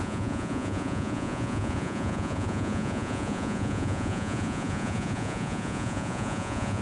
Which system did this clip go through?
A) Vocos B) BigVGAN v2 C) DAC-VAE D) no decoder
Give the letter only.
A